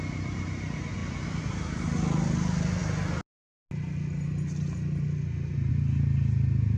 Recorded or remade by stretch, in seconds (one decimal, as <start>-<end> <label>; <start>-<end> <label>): 0.0-6.8 recorded